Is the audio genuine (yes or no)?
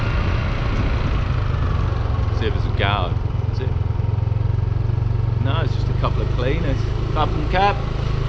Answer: yes